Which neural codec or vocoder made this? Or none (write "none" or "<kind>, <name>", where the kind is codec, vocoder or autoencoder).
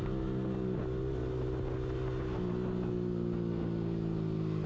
none